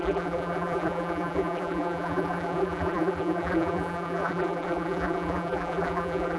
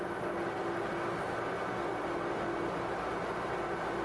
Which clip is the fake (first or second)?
first